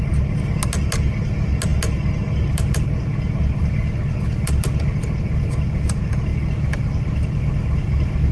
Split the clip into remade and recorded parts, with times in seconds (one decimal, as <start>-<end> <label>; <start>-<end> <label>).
0.0-8.3 recorded